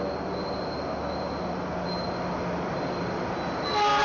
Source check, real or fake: real